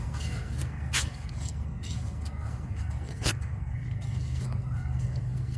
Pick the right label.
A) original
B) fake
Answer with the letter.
B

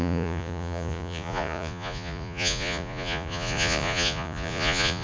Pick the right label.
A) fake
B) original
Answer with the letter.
A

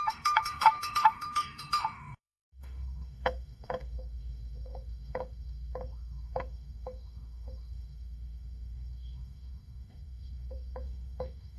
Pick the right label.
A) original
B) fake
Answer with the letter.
B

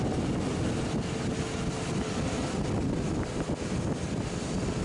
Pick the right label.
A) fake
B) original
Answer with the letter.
B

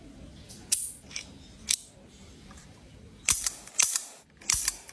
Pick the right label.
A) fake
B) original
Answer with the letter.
A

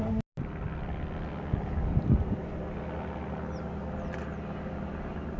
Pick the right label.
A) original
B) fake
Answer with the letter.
A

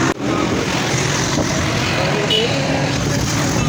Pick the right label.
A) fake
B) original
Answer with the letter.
B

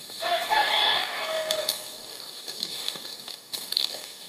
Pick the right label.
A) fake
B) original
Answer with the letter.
A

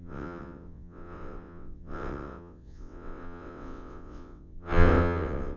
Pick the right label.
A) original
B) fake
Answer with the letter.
B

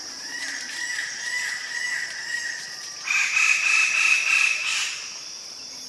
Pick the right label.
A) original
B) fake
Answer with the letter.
B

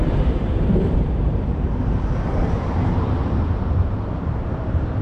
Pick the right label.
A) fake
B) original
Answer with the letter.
A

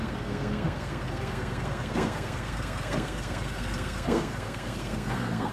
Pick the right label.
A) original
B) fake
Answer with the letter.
B